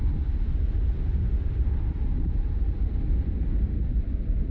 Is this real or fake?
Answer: real